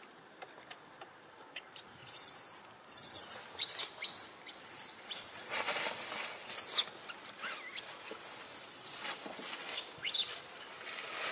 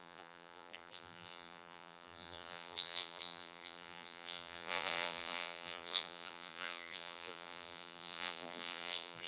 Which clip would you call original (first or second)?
first